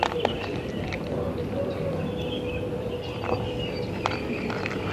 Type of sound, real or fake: real